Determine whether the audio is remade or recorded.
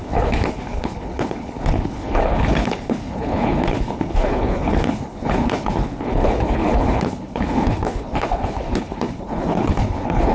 remade